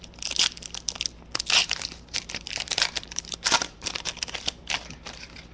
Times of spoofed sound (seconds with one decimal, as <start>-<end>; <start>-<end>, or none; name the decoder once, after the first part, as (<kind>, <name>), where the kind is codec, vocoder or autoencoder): 1.6-4.0 (vocoder, BigVGAN v2)